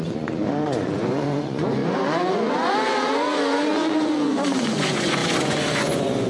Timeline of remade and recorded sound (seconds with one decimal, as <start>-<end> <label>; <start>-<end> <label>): 0.0-6.3 remade